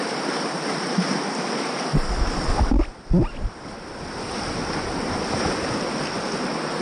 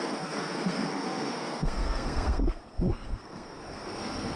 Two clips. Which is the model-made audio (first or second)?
second